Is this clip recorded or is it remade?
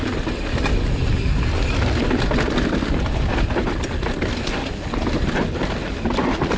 recorded